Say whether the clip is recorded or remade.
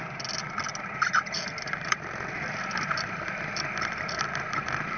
recorded